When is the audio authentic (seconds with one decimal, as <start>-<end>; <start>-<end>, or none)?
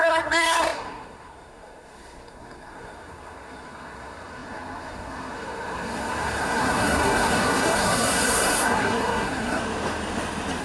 9.6-10.6